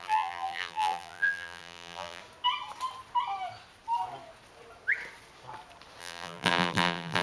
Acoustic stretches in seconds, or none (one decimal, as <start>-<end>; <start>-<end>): 2.2-6.0